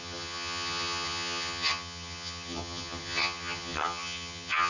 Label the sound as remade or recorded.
remade